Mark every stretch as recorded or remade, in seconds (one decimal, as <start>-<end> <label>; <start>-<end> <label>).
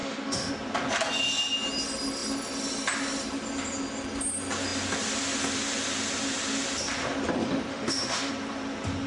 0.0-0.5 remade; 0.5-7.7 recorded; 7.7-8.3 remade; 8.3-9.1 recorded